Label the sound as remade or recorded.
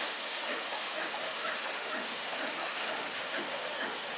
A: remade